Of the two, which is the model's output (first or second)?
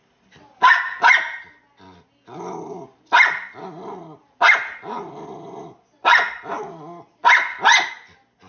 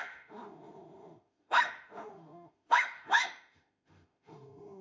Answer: second